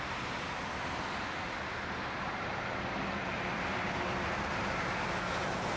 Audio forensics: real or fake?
real